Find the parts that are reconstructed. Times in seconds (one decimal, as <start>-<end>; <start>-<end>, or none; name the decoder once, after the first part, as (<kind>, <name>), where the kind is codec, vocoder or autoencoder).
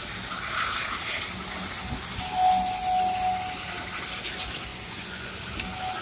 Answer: 4.7-5.3 (vocoder, Vocos)